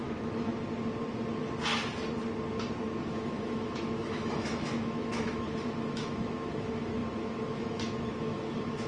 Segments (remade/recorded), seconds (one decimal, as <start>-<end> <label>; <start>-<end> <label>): 0.0-0.5 remade; 0.5-3.0 recorded; 3.0-8.9 remade